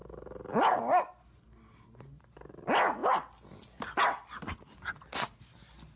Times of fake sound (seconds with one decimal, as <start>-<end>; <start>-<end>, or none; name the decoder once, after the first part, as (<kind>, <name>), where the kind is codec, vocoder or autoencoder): none

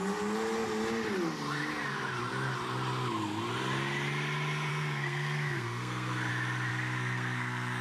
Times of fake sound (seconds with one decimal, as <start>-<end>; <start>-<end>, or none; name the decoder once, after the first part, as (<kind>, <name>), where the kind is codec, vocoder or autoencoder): 4.7-6.3 (codec, SNAC); 6.7-7.8

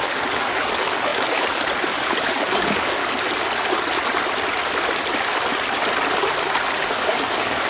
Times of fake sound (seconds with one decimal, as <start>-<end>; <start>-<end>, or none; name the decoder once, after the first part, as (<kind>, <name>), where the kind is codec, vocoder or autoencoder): 0.0-3.0 (codec, DAC); 6.8-7.7